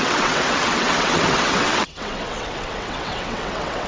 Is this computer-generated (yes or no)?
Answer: yes